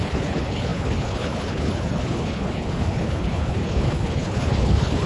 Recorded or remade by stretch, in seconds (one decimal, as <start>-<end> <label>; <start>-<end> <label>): 0.0-5.1 remade